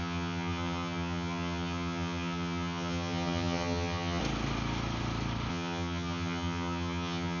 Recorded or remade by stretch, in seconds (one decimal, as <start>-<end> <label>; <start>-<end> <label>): 0.0-4.2 remade; 4.2-5.5 recorded; 5.5-7.4 remade